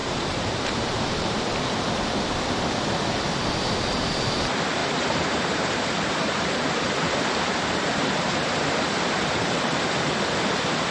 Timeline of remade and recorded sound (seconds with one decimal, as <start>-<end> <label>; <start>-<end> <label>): 0.0-1.4 remade; 1.4-4.8 recorded; 4.8-9.6 remade; 9.6-10.9 recorded

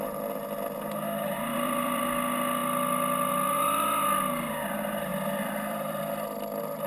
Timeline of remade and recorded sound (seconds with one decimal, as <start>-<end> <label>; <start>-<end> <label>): 0.0-1.5 recorded; 1.5-2.0 remade; 2.0-5.1 recorded; 5.1-6.0 remade; 6.0-6.9 recorded

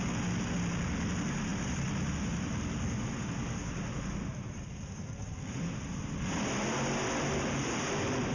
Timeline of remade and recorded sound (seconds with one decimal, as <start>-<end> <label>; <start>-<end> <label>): 0.0-8.3 recorded

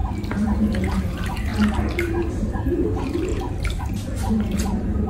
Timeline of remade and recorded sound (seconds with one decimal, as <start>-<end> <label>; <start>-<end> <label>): 0.0-0.8 recorded; 0.8-1.5 remade; 1.5-2.3 recorded; 2.3-3.3 remade; 3.3-3.8 recorded; 3.8-5.1 remade